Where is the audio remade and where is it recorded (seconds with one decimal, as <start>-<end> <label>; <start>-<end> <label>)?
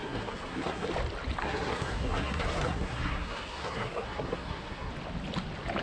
0.0-0.9 remade; 0.9-1.4 recorded; 1.4-4.9 remade; 4.9-5.8 recorded